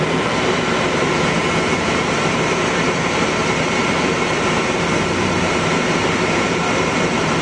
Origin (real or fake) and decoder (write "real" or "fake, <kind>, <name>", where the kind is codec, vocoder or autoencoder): fake, vocoder, BigVGAN v2